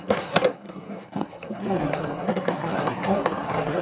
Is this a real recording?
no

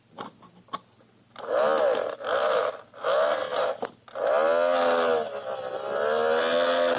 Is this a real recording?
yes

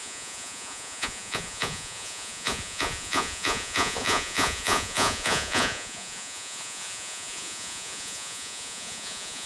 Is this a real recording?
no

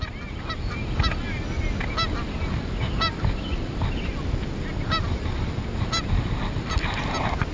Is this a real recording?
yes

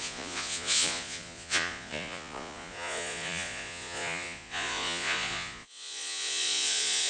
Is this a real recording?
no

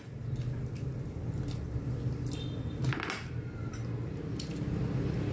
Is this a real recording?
yes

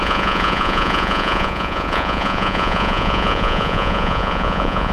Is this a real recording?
no